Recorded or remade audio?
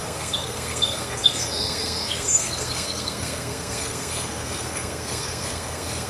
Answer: remade